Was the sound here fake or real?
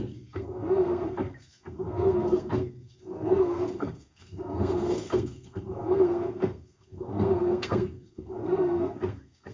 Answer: fake